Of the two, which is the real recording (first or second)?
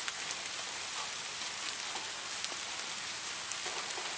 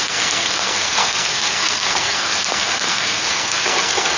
first